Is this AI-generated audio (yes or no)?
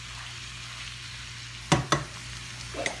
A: no